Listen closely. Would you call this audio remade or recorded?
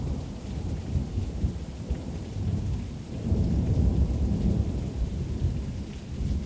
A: remade